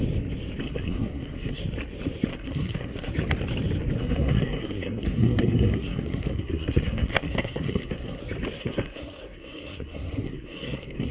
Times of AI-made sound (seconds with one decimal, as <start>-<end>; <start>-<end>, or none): 0.6-1.6; 2.3-3.1; 4.0-8.2; 8.6-11.1